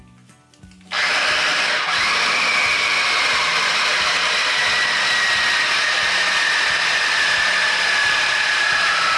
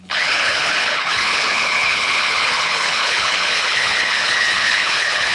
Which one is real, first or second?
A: first